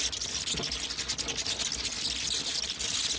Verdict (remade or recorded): recorded